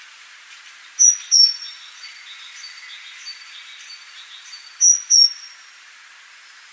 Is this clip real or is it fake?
real